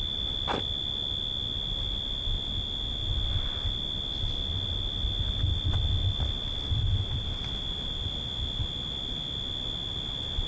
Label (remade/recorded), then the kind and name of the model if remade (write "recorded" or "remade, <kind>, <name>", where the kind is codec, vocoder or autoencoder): recorded